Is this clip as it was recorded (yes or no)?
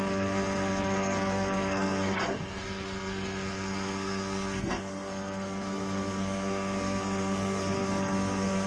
no